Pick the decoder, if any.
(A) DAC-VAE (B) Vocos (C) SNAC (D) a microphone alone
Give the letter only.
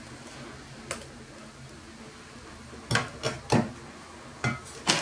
D